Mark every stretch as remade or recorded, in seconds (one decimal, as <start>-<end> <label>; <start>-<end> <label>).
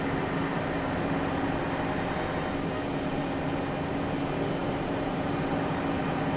0.0-0.5 recorded; 0.5-1.4 remade; 1.4-4.6 recorded; 4.6-5.3 remade; 5.3-6.4 recorded